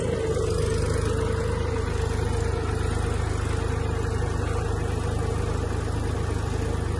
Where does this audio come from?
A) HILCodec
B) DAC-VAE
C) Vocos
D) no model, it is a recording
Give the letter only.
D